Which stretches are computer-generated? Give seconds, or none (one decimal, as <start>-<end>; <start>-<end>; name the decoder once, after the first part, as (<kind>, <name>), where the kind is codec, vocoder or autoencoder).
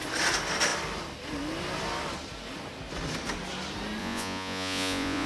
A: 4.0-5.3 (vocoder, Vocos)